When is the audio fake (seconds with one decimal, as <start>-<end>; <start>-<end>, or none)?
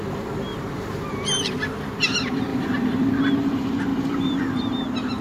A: 0.5-1.8; 2.5-3.1; 3.9-4.4